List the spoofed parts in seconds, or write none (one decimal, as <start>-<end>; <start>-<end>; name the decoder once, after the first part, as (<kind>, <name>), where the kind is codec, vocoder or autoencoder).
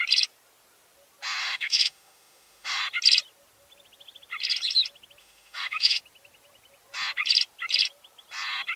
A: 1.4-2.8 (autoencoder, DAC-VAE); 5.2-6.0